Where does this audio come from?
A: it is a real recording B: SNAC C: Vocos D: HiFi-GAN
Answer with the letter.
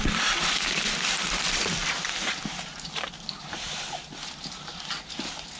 A